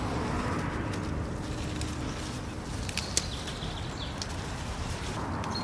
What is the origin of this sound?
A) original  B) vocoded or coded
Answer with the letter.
A